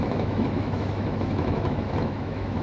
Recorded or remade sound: remade